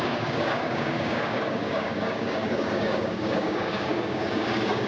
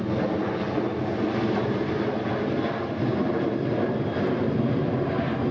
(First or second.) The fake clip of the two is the first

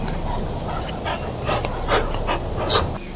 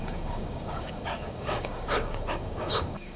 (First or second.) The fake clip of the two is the second